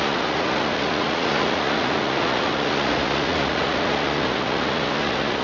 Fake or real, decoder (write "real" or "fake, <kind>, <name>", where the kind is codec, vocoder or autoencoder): fake, vocoder, Vocos